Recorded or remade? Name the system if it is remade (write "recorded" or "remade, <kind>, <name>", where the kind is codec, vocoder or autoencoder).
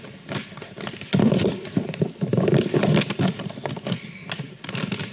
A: recorded